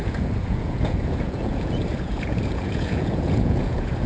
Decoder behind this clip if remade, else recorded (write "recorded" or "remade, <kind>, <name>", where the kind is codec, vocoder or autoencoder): remade, vocoder, Vocos